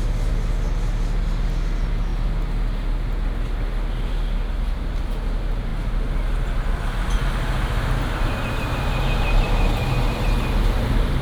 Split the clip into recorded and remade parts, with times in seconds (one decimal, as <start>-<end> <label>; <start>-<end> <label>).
0.0-11.2 recorded